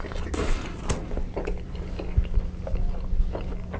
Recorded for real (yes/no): yes